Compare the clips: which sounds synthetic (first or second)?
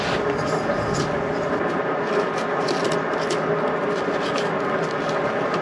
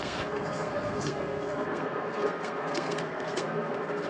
second